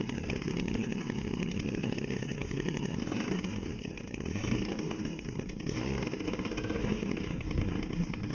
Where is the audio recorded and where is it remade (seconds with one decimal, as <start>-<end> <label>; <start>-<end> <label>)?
0.0-8.3 remade